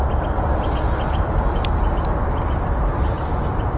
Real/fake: real